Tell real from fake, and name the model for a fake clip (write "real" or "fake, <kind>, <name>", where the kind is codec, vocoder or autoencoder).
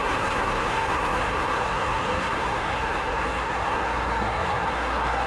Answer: fake, codec, SNAC